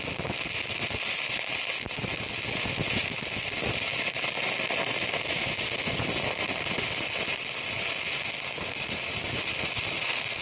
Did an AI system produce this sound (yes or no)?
no